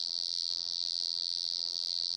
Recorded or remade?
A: remade